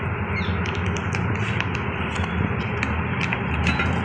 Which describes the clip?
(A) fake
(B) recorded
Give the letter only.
B